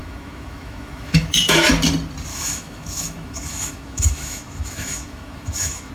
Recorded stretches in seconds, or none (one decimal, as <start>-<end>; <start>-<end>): 1.7-2.3